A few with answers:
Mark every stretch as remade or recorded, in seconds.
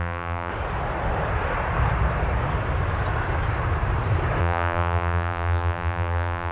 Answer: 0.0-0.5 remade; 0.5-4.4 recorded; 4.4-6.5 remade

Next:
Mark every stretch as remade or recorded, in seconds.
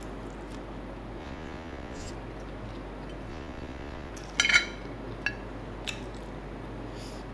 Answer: 0.0-1.2 recorded; 1.2-2.1 remade; 2.1-3.3 recorded; 3.3-4.1 remade; 4.1-7.3 recorded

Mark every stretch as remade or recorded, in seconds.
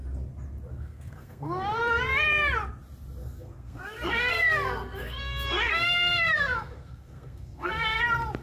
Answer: 0.0-0.7 recorded; 0.7-1.8 remade; 1.8-3.2 recorded; 3.2-8.0 remade; 8.0-8.4 recorded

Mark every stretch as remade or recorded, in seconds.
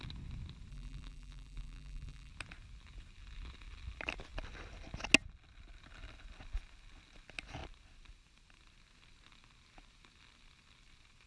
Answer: 0.0-0.7 recorded; 0.7-2.3 remade; 2.3-11.3 recorded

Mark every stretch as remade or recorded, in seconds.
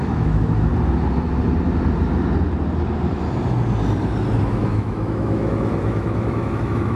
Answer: 0.0-0.7 remade; 0.7-4.4 recorded; 4.4-7.0 remade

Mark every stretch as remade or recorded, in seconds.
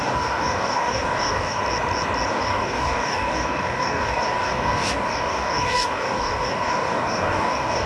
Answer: 0.0-1.6 remade; 1.6-2.3 recorded; 2.3-7.9 remade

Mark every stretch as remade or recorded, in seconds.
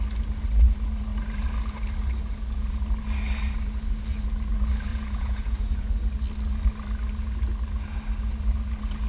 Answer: 0.0-4.9 recorded; 4.9-5.9 remade; 5.9-9.1 recorded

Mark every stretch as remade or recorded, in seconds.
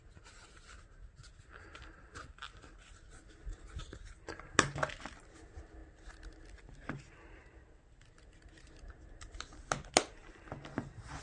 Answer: 0.0-11.2 recorded